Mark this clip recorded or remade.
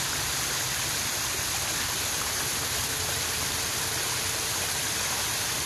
remade